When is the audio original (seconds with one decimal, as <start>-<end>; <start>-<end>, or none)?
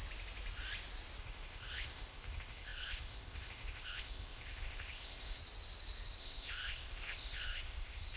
0.0-1.2; 5.4-6.2